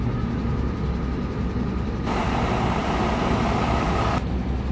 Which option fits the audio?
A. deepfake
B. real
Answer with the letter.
B